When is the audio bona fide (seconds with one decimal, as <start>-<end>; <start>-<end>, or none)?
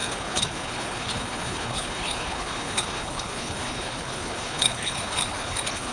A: none